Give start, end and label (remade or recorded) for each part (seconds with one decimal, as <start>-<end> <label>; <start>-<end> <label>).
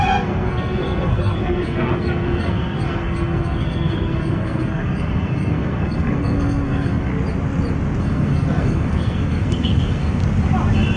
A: 0.0-7.1 remade; 7.1-8.0 recorded; 8.0-10.2 remade; 10.2-11.0 recorded